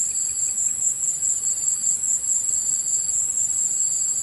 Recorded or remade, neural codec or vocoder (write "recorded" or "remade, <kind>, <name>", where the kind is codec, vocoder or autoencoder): recorded